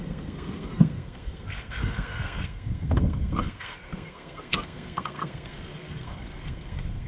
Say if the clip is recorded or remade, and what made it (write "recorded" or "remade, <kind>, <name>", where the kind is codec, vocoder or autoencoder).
remade, codec, SNAC